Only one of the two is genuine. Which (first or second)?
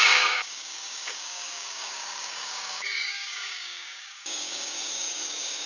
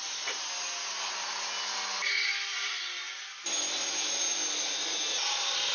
second